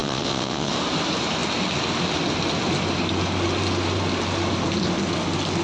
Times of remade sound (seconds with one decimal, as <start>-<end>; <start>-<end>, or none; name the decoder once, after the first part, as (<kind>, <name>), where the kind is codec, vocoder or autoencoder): 0.0-0.7 (vocoder, WaveNeXt)